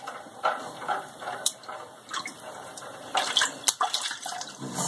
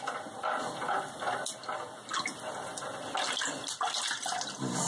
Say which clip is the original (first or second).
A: second